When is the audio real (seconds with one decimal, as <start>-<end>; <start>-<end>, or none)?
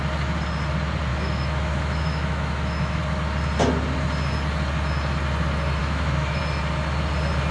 0.0-1.1; 3.0-5.8; 6.4-7.5